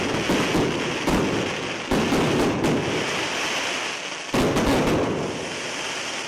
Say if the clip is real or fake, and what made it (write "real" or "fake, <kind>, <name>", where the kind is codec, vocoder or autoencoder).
real